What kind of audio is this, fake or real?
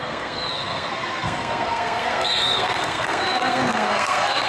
fake